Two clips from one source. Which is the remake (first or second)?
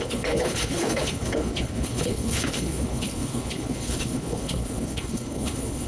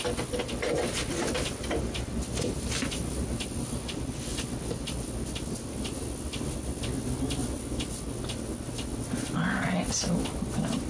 first